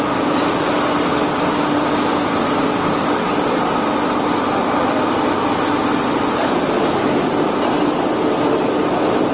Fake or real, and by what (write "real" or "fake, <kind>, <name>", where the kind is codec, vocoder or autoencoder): real